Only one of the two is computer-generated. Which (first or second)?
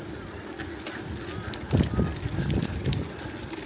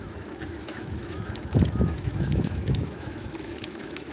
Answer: second